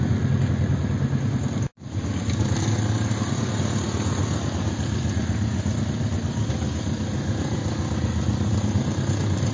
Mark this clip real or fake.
real